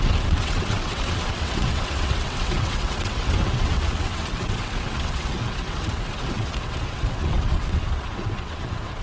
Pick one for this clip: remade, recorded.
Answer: remade